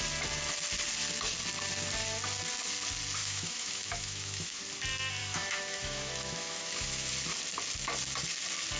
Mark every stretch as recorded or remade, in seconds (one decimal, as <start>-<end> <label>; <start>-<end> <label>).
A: 0.0-3.2 recorded; 3.2-4.6 remade; 4.6-5.2 recorded; 5.2-7.1 remade; 7.1-8.8 recorded